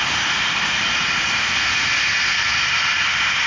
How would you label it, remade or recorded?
recorded